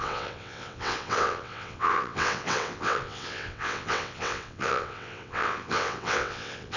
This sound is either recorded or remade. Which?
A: remade